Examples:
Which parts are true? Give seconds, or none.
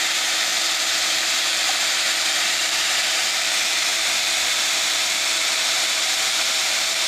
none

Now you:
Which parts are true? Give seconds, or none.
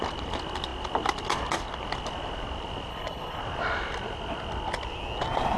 0.0-2.9; 3.4-5.6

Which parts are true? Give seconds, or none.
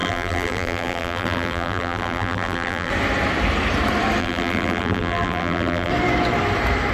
2.9-4.2; 5.9-6.9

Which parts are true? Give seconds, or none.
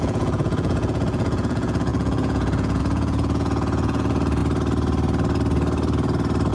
4.4-6.5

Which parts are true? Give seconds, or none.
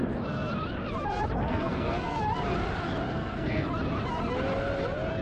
0.0-1.5; 2.2-3.1; 3.7-5.2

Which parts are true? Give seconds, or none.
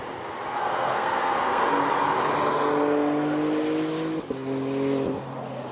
0.0-0.6; 1.6-5.7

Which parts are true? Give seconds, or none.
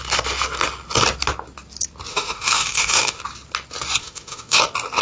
0.0-2.1; 3.2-4.0; 4.6-5.0